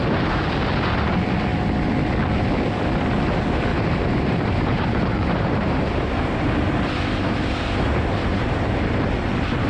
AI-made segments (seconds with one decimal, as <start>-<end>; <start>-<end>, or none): 3.7-8.9